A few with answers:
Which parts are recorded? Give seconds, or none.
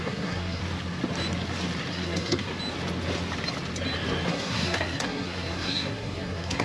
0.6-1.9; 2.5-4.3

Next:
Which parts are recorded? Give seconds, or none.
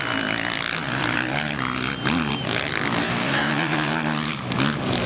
0.0-3.0; 3.5-5.1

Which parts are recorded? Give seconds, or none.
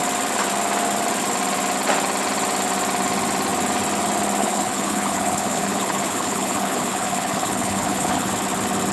0.0-4.4; 8.3-8.9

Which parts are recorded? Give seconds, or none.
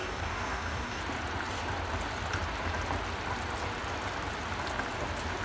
1.0-5.4